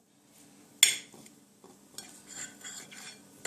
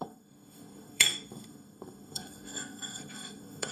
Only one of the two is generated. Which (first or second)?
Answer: second